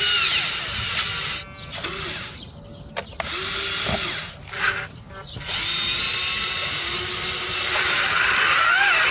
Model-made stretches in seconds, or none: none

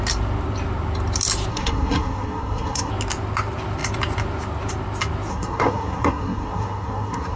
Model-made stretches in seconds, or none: 1.5-2.9 (codec, SNAC); 5.3-7.4